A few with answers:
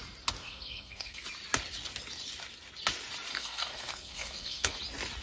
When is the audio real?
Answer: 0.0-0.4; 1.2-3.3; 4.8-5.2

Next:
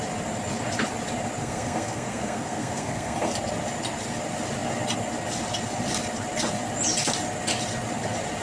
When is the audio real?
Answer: 0.0-1.4; 3.3-8.4

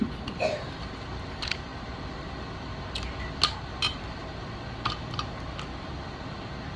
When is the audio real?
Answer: 0.0-6.8

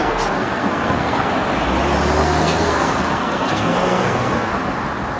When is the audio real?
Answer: 1.3-2.2; 4.5-5.2

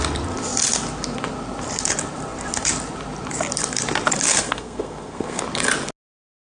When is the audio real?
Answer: 0.0-4.3; 5.4-6.5